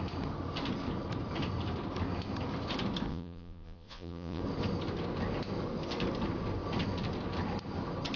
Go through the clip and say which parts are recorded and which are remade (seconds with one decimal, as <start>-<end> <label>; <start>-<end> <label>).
0.0-3.1 recorded; 3.1-4.4 remade; 4.4-8.2 recorded